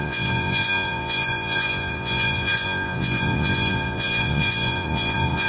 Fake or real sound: fake